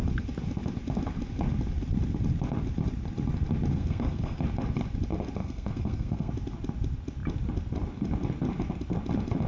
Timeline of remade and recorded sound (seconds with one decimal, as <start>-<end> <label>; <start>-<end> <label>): 0.0-3.7 recorded; 3.7-4.4 remade; 4.4-5.4 recorded; 5.4-6.3 remade; 6.3-9.5 recorded